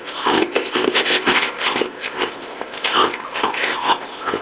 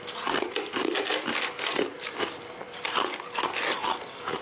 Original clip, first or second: second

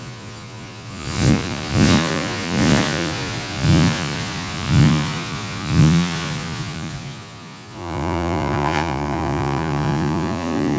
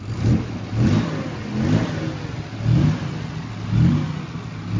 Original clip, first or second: second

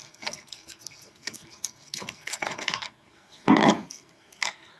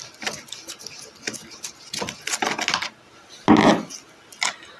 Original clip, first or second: second